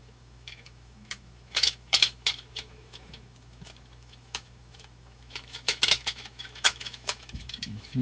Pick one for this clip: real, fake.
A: fake